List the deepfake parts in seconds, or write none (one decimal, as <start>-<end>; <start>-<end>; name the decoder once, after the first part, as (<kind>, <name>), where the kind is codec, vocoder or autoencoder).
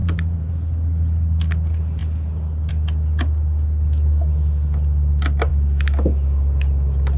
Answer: 0.0-0.5 (vocoder, BigVGAN v2)